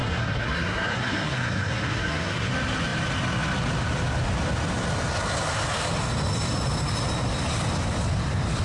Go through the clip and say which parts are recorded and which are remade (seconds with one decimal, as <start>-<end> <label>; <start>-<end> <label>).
0.0-2.5 remade; 2.5-8.6 recorded